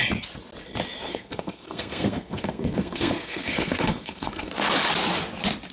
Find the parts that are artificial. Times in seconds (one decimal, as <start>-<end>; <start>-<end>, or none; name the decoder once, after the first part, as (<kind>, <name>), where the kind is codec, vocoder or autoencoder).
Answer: 1.1-4.5 (codec, SNAC)